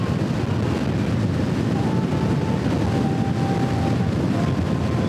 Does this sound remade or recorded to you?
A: recorded